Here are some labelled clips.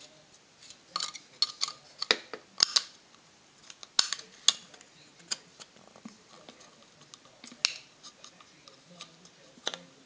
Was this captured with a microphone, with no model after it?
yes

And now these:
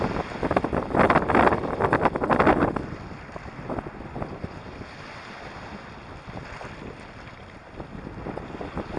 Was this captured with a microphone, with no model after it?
yes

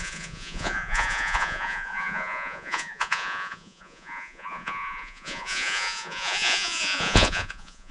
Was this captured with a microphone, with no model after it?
no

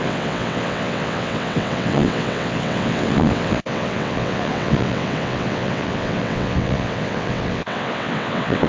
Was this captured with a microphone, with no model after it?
no